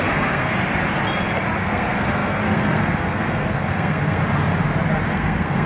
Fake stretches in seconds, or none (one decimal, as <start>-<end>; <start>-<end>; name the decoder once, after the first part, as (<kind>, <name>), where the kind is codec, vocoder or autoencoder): 0.0-0.6 (codec, SNAC); 1.6-4.2; 5.1-5.7